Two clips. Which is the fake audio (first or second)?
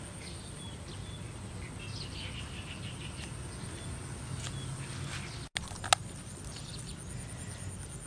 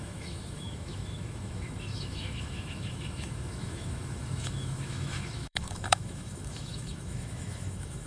second